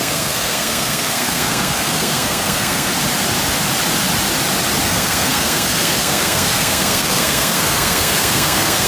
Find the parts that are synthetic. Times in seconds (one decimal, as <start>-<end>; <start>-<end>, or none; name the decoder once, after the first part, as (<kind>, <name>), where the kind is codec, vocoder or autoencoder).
0.0-2.9 (codec, SNAC); 4.8-8.9